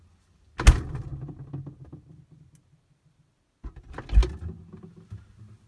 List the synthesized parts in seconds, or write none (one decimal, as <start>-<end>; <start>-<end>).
none